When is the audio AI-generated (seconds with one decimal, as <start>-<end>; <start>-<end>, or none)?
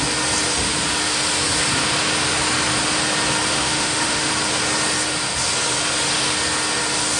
3.6-4.3